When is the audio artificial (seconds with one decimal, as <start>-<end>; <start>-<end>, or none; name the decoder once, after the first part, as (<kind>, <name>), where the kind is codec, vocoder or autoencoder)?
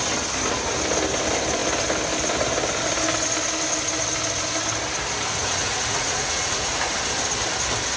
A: 5.4-6.9 (vocoder, Vocos)